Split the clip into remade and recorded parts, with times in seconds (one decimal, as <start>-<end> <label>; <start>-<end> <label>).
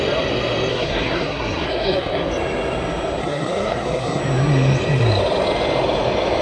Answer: 0.0-0.7 recorded; 0.7-2.3 remade; 2.3-3.2 recorded; 3.2-4.2 remade; 4.2-6.4 recorded